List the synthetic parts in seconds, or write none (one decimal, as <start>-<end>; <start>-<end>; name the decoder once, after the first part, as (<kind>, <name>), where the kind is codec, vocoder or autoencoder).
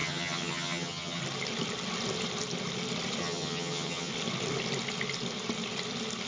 0.0-1.2 (vocoder, HiFi-GAN); 3.2-4.1